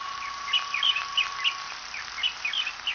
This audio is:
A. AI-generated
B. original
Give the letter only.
B